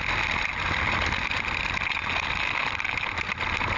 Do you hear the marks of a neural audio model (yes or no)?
no